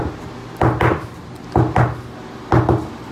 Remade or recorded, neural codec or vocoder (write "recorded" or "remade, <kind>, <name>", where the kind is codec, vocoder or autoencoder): recorded